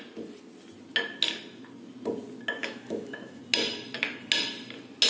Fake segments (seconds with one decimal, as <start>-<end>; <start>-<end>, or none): 2.6-3.4